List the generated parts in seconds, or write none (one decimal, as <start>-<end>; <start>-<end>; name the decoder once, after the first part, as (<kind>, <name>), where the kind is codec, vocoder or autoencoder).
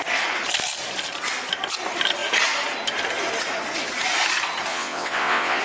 4.7-5.6 (vocoder, WaveNeXt)